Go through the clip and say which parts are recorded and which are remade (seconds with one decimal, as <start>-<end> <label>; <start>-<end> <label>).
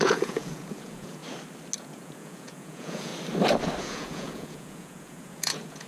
0.0-1.2 remade; 1.2-1.8 recorded; 1.8-3.1 remade; 3.1-3.8 recorded; 3.8-5.9 remade